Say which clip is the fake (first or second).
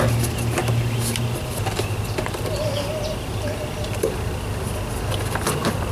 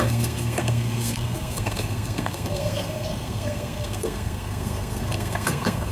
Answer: second